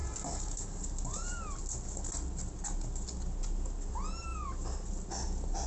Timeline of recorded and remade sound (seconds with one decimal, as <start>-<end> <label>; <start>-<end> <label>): 0.0-5.7 recorded